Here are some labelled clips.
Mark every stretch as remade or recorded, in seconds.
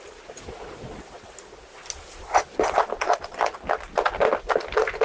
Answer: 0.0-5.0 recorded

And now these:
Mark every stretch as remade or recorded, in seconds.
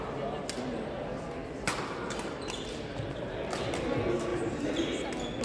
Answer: 0.0-5.4 recorded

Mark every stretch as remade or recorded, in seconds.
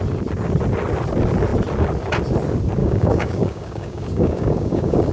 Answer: 0.0-2.8 recorded; 2.8-5.1 remade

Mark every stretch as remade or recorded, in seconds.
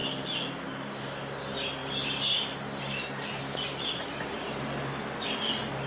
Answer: 0.0-5.9 recorded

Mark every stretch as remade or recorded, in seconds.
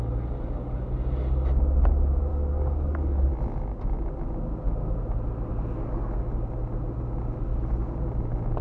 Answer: 0.0-2.3 recorded; 2.3-3.3 remade; 3.3-8.6 recorded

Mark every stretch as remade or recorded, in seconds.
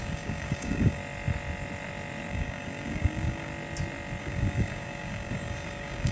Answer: 0.0-1.0 remade; 1.0-2.3 recorded; 2.3-3.5 remade; 3.5-4.2 recorded; 4.2-6.1 remade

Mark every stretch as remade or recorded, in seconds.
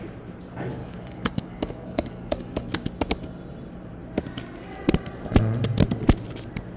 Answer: 0.0-0.8 recorded; 0.8-2.7 remade; 2.7-6.8 recorded